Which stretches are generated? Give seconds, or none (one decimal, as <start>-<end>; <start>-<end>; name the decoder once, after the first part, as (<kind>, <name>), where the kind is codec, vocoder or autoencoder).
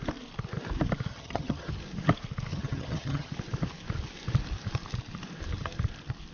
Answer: 1.1-1.7 (vocoder, HiFi-GAN); 2.5-3.3